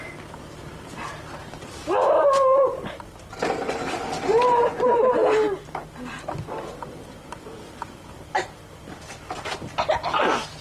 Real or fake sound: fake